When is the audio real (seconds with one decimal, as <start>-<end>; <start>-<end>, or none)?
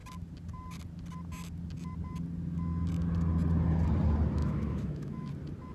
0.0-4.4; 5.3-5.7